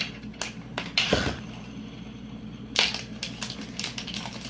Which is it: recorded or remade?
recorded